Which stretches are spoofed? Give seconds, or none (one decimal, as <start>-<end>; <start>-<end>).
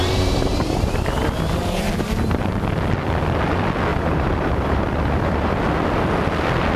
0.0-2.7; 3.9-5.6